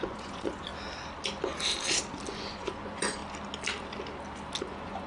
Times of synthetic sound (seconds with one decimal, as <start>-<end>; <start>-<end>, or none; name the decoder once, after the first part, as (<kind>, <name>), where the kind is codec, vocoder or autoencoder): 0.0-0.7 (vocoder, Vocos); 2.3-3.2; 4.6-5.1